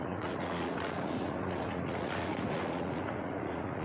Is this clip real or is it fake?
fake